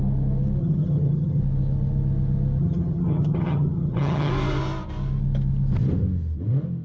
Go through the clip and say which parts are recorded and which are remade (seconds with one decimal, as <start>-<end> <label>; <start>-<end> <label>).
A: 0.0-0.6 recorded; 0.6-1.4 remade; 1.4-2.6 recorded; 2.6-4.3 remade; 4.3-6.8 recorded